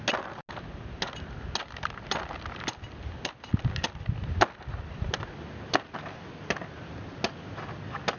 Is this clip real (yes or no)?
yes